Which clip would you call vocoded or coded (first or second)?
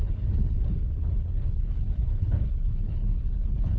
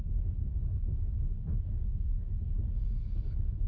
first